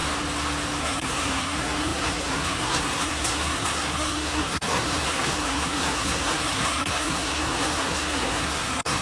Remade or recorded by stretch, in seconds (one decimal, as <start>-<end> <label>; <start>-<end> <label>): 0.0-0.8 recorded; 0.8-9.0 remade